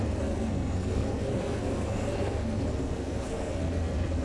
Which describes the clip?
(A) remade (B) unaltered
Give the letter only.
A